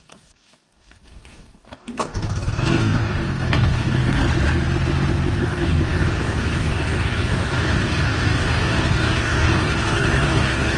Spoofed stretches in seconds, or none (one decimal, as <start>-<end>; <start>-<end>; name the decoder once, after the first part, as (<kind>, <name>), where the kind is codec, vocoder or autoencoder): 0.0-4.2 (codec, DAC); 5.4-10.8